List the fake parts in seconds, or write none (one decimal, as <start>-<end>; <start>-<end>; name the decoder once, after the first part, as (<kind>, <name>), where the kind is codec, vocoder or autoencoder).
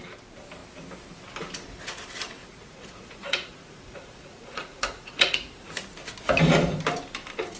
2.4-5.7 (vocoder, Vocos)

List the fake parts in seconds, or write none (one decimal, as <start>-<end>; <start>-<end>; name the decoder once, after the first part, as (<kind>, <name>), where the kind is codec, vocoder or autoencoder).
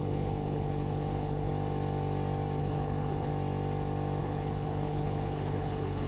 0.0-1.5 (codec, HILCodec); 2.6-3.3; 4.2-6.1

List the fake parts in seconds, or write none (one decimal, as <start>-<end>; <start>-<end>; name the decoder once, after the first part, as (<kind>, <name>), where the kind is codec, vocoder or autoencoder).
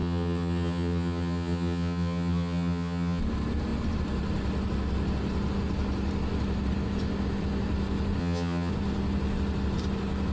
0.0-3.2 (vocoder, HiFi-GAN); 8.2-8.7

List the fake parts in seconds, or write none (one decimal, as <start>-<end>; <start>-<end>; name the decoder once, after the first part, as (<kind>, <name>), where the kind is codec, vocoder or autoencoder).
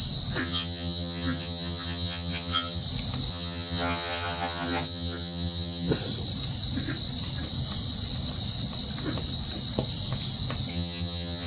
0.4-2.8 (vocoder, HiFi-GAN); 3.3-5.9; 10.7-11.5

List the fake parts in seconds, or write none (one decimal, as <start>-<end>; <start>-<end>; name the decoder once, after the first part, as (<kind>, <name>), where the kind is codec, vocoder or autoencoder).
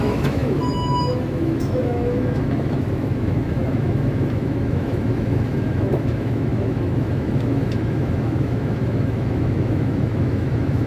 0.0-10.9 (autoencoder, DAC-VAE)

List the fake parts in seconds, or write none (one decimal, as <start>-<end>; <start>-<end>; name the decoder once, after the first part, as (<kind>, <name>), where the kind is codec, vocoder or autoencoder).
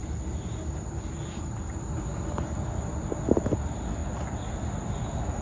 none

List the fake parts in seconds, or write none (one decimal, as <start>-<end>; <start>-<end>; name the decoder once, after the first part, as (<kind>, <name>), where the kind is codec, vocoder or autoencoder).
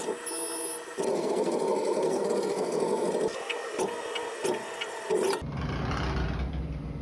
1.1-3.1 (codec, SNAC)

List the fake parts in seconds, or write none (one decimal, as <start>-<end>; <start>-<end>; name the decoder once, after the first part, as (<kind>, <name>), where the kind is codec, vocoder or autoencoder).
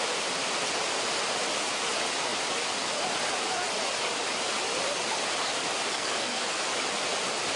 5.9-6.6 (codec, SNAC)